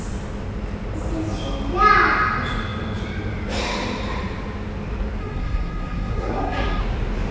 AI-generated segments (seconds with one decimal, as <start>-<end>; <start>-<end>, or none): 5.2-6.8